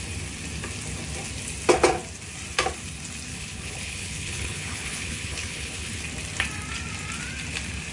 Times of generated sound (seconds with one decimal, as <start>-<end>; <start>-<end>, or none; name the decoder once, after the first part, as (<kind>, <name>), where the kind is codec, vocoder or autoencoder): 3.3-6.0 (codec, HILCodec)